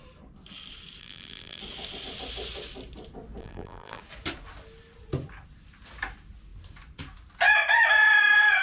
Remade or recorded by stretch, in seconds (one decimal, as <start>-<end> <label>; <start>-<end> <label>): 0.0-1.0 recorded; 1.0-1.6 remade; 1.6-3.4 recorded; 3.4-4.0 remade; 4.0-8.6 recorded